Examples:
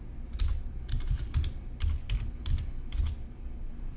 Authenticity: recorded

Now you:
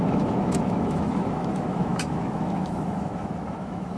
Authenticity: remade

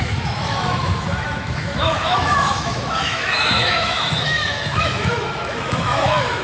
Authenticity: remade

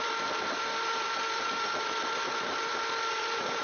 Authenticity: remade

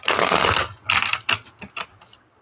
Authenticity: recorded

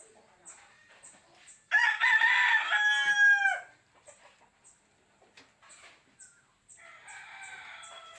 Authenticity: recorded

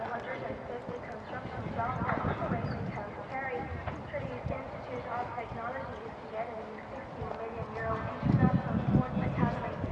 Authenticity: recorded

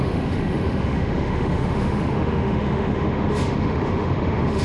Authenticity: remade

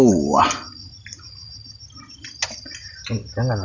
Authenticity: recorded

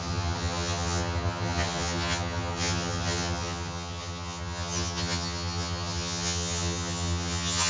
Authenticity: remade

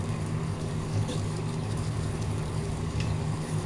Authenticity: remade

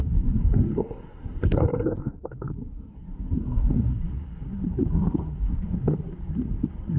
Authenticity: remade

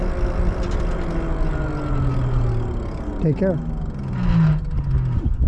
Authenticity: recorded